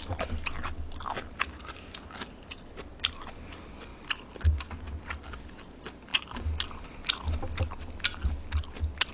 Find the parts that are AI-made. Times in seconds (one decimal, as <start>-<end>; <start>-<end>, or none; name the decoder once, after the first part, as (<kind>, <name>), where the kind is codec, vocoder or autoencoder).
none